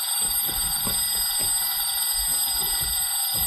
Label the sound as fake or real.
real